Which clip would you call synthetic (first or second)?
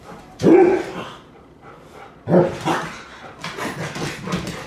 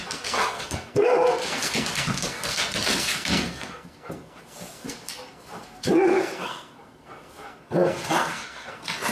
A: second